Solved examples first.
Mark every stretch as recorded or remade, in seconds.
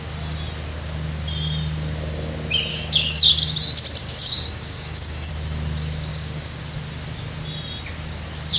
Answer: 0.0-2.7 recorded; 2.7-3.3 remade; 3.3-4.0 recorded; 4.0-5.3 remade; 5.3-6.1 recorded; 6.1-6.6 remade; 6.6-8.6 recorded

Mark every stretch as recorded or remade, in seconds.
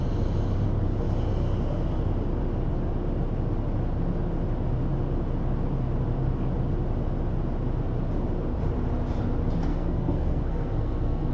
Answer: 0.0-9.7 recorded; 9.7-11.3 remade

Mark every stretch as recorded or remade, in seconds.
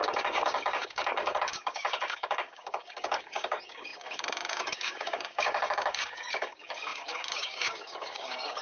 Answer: 0.0-8.6 remade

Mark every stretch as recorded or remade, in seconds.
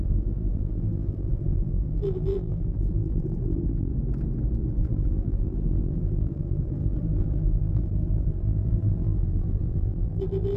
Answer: 0.0-3.9 remade; 3.9-4.8 recorded; 4.8-10.6 remade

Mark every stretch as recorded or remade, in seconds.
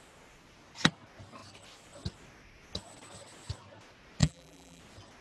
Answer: 0.0-4.2 recorded; 4.2-4.8 remade; 4.8-5.2 recorded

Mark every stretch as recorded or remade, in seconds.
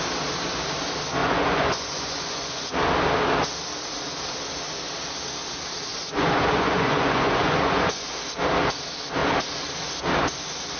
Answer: 0.0-1.2 recorded; 1.2-2.7 remade; 2.7-5.9 recorded; 5.9-8.1 remade; 8.1-10.8 recorded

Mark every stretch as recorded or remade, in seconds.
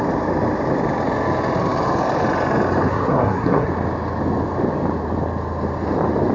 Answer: 0.0-2.9 recorded; 2.9-3.7 remade; 3.7-6.3 recorded